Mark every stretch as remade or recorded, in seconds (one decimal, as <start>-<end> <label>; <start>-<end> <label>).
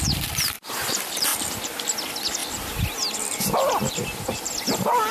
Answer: 0.0-1.3 remade; 1.3-2.0 recorded; 2.0-2.4 remade; 2.4-4.2 recorded; 4.2-5.1 remade